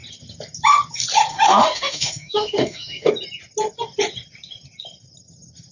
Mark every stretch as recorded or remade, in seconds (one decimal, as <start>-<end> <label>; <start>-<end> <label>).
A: 0.0-1.3 recorded; 1.3-3.1 remade; 3.1-5.7 recorded